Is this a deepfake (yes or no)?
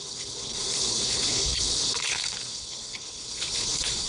yes